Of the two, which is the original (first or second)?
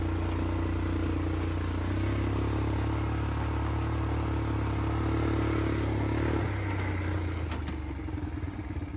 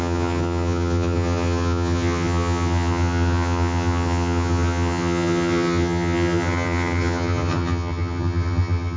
first